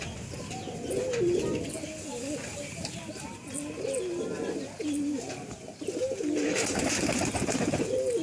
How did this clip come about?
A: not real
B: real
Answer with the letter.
B